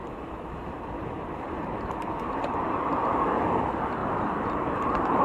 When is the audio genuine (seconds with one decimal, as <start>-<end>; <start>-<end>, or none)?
2.2-4.0